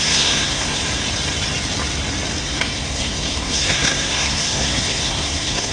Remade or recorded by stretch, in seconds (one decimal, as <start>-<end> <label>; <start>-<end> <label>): 0.0-0.8 remade; 0.8-2.4 recorded; 2.4-5.7 remade